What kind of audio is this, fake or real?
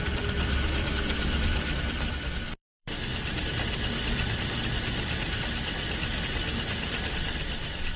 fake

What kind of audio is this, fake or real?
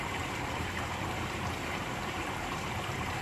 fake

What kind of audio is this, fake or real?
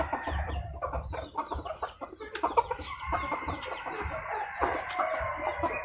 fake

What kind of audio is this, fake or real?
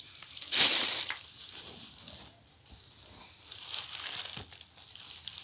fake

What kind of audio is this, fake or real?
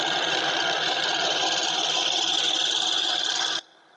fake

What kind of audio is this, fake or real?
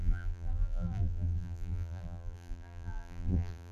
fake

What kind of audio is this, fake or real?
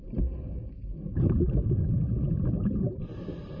real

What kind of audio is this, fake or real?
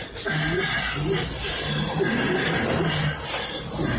fake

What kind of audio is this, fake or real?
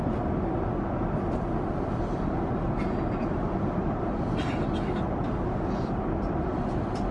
real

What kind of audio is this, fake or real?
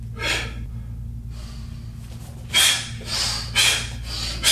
real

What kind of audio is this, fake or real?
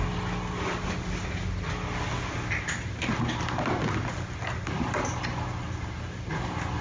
real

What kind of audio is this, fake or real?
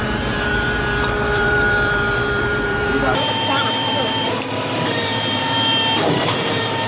fake